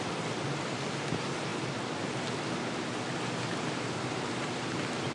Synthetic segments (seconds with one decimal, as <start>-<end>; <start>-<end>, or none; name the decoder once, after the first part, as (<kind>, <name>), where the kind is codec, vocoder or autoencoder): none